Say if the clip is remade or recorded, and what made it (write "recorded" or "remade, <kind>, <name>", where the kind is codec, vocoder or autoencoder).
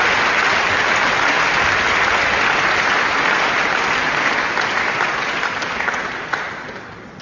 recorded